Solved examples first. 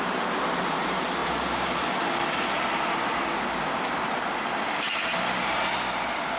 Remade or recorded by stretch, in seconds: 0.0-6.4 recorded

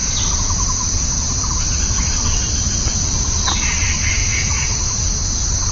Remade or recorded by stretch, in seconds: 0.0-1.8 remade; 1.8-4.2 recorded; 4.2-5.0 remade; 5.0-5.7 recorded

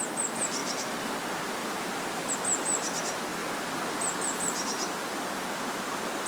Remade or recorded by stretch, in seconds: 0.0-0.6 recorded; 0.6-1.1 remade; 1.1-1.6 recorded; 1.6-2.3 remade; 2.3-3.4 recorded; 3.4-5.6 remade; 5.6-6.3 recorded

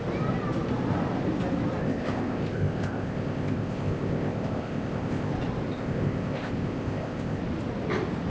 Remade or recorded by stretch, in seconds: 0.0-1.8 recorded; 1.8-5.3 remade; 5.3-5.7 recorded; 5.7-7.4 remade; 7.4-8.3 recorded

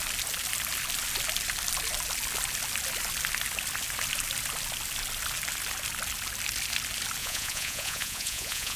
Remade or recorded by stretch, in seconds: 0.0-7.2 recorded; 7.2-8.8 remade

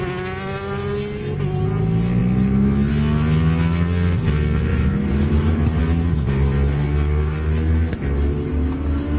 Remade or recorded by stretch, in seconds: 0.0-4.7 recorded; 4.7-5.8 remade; 5.8-9.2 recorded

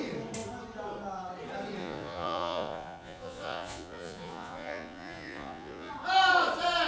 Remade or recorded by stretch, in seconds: 0.0-1.8 recorded; 1.8-5.9 remade; 5.9-6.9 recorded

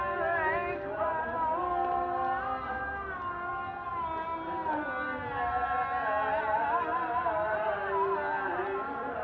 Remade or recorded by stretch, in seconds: 0.0-9.2 recorded